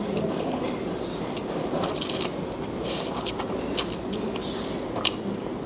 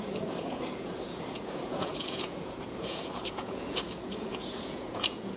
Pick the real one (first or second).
first